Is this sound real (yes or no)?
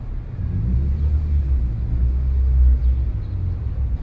yes